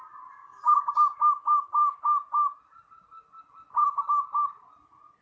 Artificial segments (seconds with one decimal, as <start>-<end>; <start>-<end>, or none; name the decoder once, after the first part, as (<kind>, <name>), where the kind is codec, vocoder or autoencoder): 0.4-0.9 (codec, DAC)